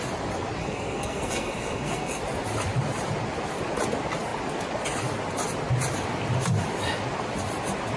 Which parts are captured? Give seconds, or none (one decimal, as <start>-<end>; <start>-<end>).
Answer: 0.0-0.6; 2.2-8.0